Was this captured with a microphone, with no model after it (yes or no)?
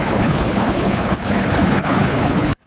no